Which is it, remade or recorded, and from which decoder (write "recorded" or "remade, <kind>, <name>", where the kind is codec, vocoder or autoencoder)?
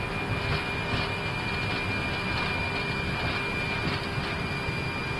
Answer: recorded